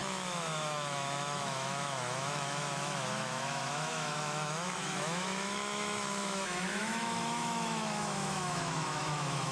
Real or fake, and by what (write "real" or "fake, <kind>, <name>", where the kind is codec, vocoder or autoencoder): fake, autoencoder, DAC-VAE